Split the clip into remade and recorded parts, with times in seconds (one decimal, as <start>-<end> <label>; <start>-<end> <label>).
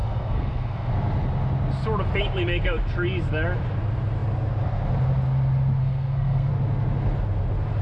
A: 0.0-0.9 remade; 0.9-5.8 recorded; 5.8-6.5 remade; 6.5-7.8 recorded